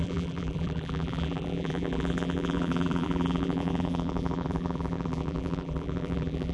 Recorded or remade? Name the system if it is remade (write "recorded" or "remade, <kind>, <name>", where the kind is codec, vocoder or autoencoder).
remade, vocoder, BigVGAN v2